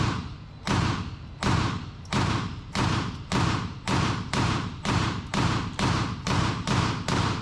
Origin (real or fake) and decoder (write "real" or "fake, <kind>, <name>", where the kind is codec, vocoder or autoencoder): fake, vocoder, BigVGAN v2